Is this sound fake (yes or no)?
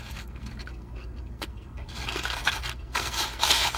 yes